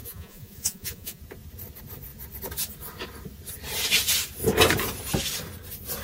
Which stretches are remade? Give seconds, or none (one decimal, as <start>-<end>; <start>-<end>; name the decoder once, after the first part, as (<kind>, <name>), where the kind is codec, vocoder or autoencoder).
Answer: 0.0-1.2 (vocoder, Vocos)